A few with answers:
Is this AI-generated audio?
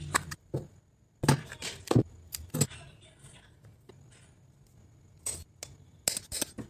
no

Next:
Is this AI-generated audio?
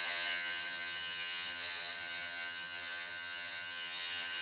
yes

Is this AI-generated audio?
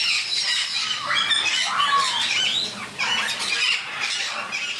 no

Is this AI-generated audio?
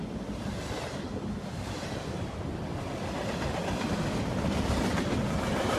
no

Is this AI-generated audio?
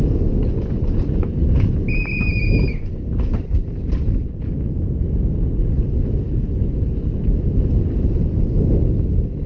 no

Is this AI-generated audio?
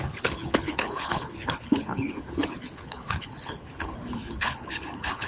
yes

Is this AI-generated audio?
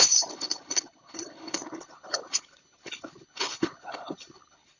yes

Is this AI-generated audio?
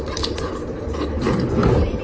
no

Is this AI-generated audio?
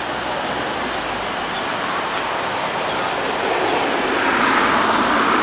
no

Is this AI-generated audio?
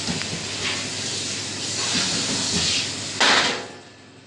no